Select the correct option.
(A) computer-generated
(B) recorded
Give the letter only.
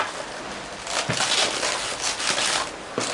B